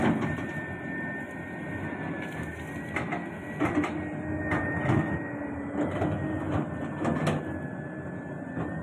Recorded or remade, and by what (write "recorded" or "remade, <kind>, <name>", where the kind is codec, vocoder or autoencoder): recorded